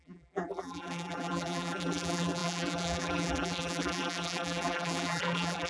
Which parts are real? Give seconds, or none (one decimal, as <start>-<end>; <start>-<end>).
none